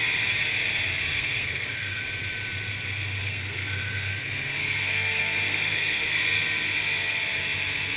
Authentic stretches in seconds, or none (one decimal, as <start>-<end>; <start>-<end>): 0.0-1.1; 2.0-3.2; 4.1-4.6; 6.2-8.0